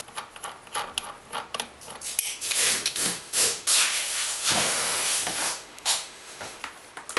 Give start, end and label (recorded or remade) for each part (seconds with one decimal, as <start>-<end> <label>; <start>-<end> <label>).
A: 0.0-2.3 recorded; 2.3-6.6 remade; 6.6-7.2 recorded